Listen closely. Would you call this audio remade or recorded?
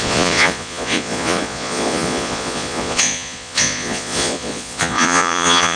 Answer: remade